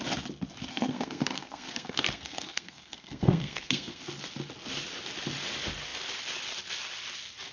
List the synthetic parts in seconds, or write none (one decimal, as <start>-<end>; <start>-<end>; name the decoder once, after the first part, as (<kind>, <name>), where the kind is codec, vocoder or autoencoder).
0.7-4.0 (codec, SNAC)